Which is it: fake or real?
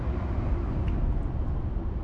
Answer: real